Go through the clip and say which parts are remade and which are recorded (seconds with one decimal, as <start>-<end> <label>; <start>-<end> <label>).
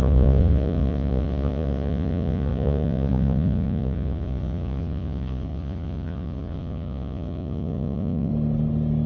0.0-8.3 remade; 8.3-9.1 recorded